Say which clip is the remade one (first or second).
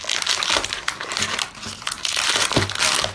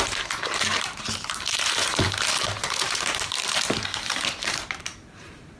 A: second